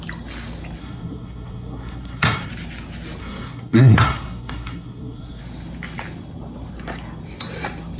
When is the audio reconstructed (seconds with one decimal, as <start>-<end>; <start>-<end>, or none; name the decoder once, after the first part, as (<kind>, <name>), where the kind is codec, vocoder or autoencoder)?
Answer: 0.8-2.5 (codec, SNAC); 3.2-5.4